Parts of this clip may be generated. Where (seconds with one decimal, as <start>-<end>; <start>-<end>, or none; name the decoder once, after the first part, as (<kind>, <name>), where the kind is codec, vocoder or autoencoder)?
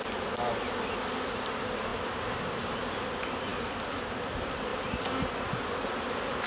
3.5-4.2 (vocoder, BigVGAN v2); 4.7-6.5